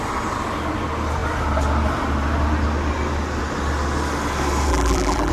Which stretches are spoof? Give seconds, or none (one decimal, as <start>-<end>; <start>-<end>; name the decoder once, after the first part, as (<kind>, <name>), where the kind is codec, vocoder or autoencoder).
4.7-5.3 (vocoder, BigVGAN v2)